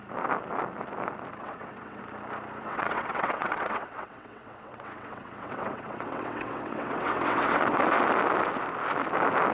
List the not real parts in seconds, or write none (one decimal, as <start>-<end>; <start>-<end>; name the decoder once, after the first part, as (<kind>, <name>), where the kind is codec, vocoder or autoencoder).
1.4-2.0 (vocoder, WaveNeXt); 2.6-7.8